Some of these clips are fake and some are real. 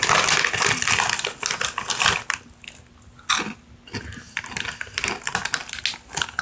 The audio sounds real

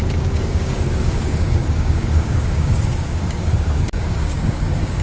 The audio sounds fake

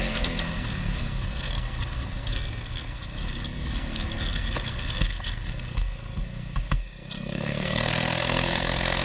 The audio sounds fake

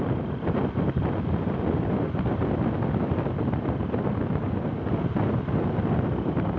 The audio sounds real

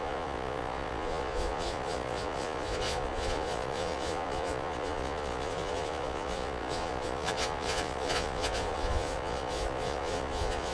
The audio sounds fake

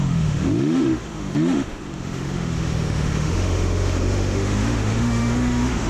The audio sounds fake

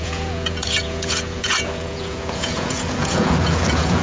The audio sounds fake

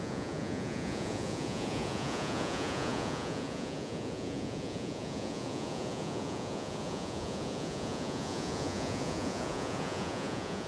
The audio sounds fake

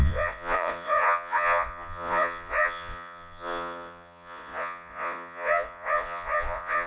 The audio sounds fake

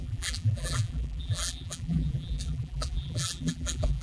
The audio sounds fake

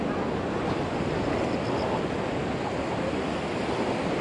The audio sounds real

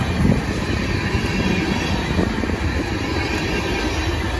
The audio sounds real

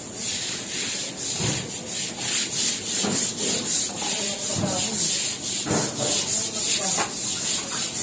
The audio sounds real